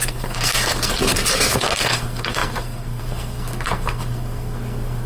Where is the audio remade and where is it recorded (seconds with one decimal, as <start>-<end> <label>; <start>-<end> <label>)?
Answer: 0.0-5.1 remade